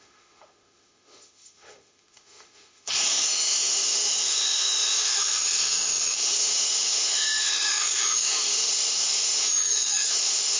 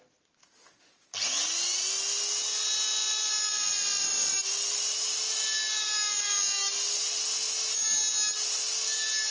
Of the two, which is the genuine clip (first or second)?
second